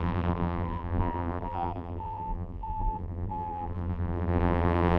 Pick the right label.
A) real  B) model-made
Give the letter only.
B